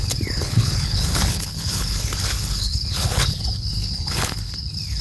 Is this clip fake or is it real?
fake